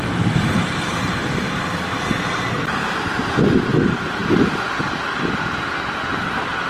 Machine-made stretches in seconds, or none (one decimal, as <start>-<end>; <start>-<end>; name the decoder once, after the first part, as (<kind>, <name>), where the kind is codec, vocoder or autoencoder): 0.0-6.7 (vocoder, BigVGAN v2)